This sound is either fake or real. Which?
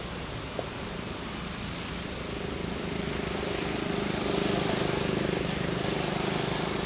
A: real